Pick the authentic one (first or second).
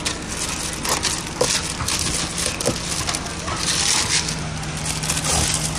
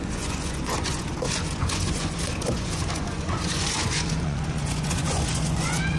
first